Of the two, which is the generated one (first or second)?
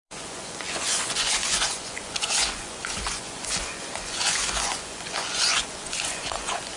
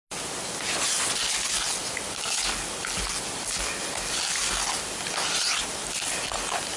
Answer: first